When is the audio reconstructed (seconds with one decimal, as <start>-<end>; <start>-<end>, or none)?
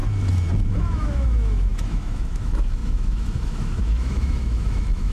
0.7-5.1